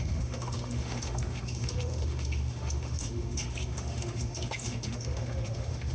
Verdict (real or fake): fake